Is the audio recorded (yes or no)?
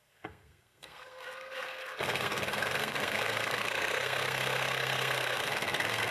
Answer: no